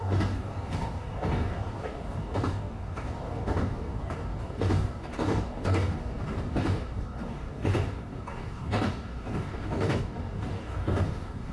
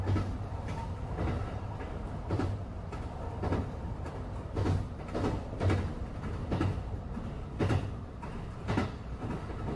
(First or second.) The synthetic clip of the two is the first